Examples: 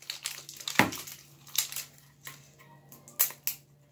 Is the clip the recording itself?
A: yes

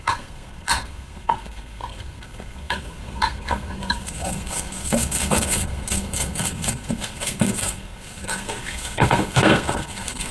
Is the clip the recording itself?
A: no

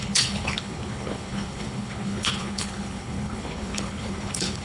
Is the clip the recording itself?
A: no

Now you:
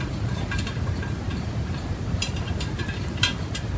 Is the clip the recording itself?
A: no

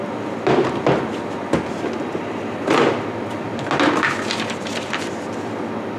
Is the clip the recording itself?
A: yes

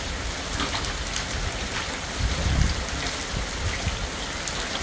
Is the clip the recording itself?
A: yes